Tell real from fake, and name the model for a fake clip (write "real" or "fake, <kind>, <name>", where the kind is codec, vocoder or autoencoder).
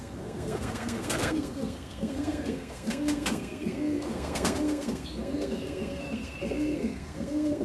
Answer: fake, codec, SNAC